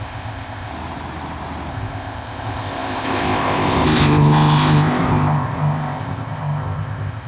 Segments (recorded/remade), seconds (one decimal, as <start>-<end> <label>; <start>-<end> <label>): 0.0-0.7 remade; 0.7-1.7 recorded; 1.7-7.3 remade